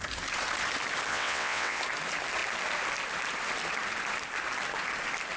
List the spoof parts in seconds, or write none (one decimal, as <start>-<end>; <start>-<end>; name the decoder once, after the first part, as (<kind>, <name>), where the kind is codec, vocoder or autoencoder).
1.1-1.8 (vocoder, WaveNeXt)